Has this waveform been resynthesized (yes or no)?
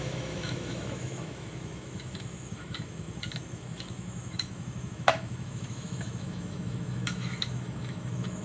yes